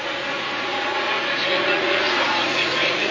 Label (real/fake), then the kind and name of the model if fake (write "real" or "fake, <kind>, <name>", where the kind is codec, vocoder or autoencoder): fake, vocoder, Vocos